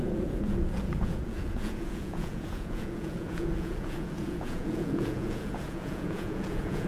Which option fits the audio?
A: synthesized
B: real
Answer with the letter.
A